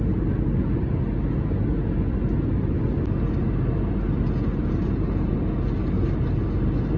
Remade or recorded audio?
recorded